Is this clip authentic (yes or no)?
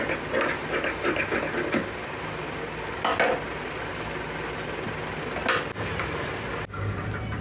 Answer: yes